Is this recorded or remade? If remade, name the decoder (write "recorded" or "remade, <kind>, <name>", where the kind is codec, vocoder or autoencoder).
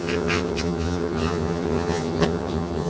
remade, vocoder, HiFi-GAN